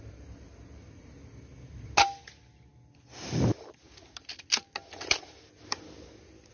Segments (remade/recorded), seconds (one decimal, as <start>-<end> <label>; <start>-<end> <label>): 0.0-6.5 recorded